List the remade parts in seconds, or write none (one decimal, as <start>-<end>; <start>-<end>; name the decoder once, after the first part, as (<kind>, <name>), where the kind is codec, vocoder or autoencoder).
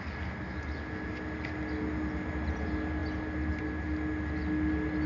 none